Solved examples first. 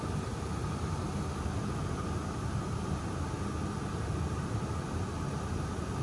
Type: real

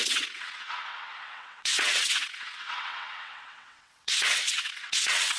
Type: fake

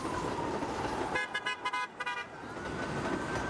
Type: real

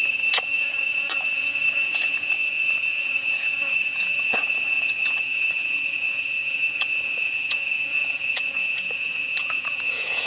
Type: fake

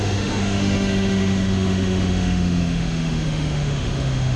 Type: fake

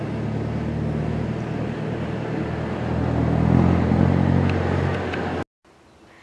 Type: real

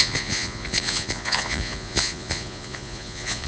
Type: fake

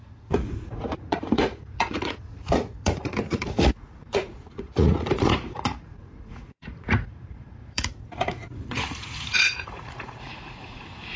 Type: fake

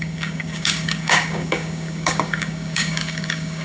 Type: fake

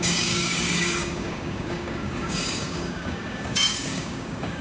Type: fake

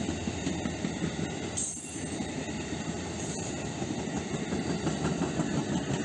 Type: real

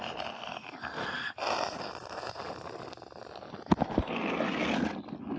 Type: real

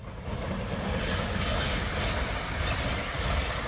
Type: real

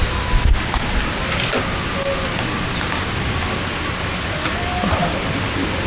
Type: real